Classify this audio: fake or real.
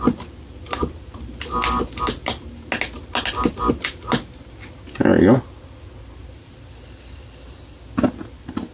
real